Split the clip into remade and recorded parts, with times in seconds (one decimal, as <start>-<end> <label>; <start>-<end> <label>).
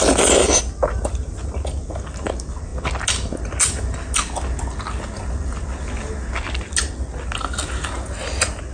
0.0-8.7 recorded